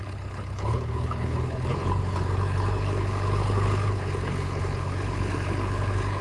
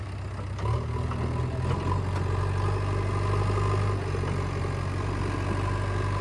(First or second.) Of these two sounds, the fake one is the first